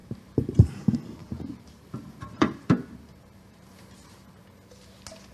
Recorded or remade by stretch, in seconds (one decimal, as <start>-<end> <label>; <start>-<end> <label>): 0.0-0.7 remade; 0.7-1.2 recorded; 1.2-4.4 remade; 4.4-5.3 recorded